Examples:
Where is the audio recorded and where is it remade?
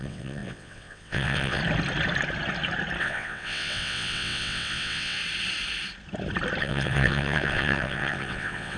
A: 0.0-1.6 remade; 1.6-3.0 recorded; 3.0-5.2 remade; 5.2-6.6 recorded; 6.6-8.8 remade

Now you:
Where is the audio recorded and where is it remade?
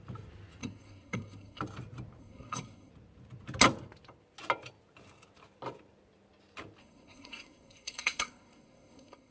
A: 0.0-0.6 recorded; 0.6-1.6 remade; 1.6-2.2 recorded; 2.2-2.9 remade; 2.9-6.8 recorded; 6.8-9.3 remade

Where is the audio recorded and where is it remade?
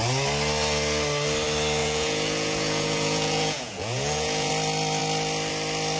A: 0.0-1.8 recorded; 1.8-4.5 remade; 4.5-6.0 recorded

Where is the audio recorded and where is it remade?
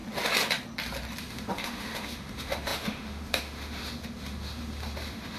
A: 0.0-1.2 recorded; 1.2-5.4 remade